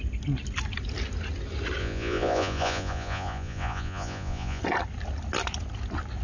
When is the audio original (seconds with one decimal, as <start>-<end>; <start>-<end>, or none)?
0.0-1.8; 4.6-6.2